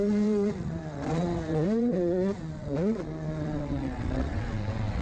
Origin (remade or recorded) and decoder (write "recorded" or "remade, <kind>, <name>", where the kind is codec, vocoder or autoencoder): remade, vocoder, WaveNeXt